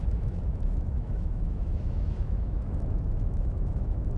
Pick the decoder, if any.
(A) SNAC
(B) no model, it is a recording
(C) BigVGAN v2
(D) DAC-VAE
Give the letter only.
D